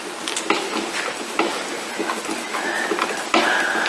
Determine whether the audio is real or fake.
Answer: real